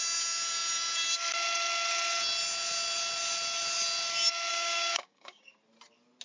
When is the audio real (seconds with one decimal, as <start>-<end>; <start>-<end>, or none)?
0.0-4.5; 5.6-6.2